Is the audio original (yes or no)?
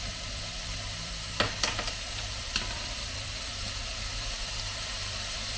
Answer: no